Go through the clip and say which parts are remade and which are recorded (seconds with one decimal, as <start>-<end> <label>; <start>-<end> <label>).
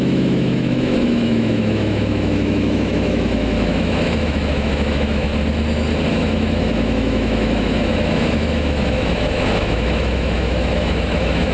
0.0-5.3 remade; 5.3-6.1 recorded; 6.1-11.5 remade